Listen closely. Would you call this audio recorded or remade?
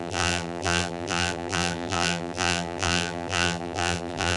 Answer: remade